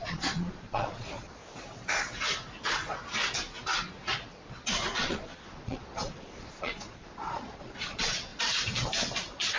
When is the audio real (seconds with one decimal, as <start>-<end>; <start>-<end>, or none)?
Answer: 1.4-5.0; 8.3-9.2